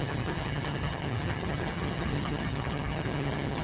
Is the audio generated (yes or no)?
yes